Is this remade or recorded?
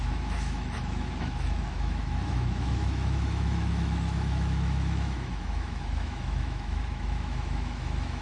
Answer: remade